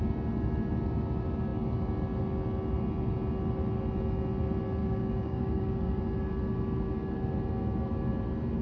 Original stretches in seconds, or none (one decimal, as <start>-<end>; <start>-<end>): 0.0-4.8; 6.0-8.6